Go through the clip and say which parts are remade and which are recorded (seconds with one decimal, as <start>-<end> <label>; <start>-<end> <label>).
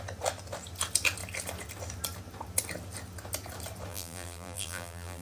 0.0-3.9 recorded; 3.9-5.2 remade